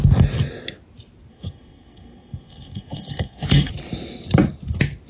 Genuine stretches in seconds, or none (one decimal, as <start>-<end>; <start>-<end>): 0.0-1.3; 3.7-5.1